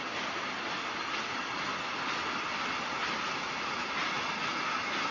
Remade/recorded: recorded